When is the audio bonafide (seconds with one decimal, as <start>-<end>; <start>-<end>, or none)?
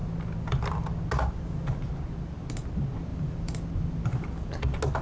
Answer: 0.0-3.1; 4.5-5.0